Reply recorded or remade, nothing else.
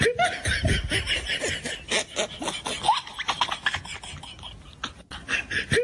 recorded